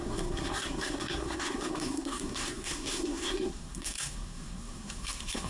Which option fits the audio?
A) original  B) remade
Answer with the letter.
B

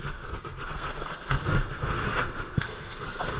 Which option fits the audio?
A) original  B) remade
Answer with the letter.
B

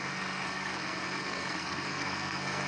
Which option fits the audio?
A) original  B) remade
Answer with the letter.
B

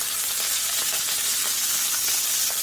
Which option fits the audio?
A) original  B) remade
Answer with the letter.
A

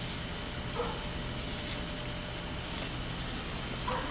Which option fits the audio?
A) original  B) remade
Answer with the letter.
A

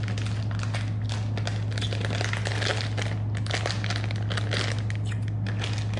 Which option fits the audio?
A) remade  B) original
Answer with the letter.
B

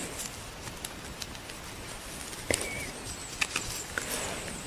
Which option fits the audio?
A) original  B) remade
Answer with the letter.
A